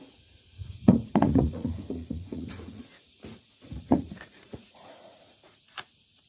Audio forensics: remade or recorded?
remade